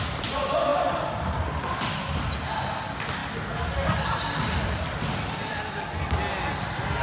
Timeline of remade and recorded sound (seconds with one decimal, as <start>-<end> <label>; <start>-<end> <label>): 0.0-3.2 remade; 3.2-4.6 recorded; 4.6-7.0 remade